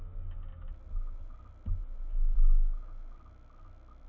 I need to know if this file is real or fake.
real